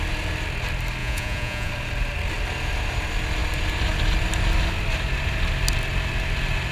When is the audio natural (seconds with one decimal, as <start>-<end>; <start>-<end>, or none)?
0.0-1.0; 1.7-6.7